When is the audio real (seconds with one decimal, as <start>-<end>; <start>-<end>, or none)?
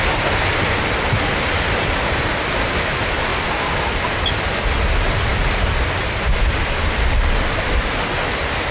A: 0.0-8.7